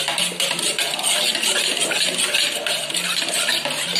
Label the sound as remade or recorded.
recorded